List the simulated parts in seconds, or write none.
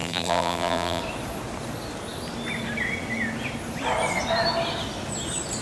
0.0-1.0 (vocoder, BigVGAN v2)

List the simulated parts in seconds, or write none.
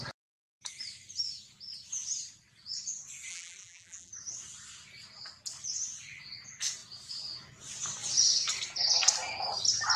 3.3-4.1 (vocoder, BigVGAN v2)